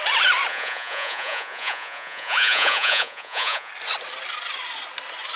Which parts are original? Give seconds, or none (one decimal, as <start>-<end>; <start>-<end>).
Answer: 0.0-0.5; 3.7-5.4